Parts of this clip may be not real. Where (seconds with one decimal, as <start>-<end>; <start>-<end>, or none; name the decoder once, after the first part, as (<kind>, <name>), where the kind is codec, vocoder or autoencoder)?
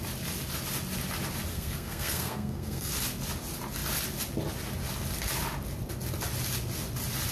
1.5-2.9 (codec, SNAC)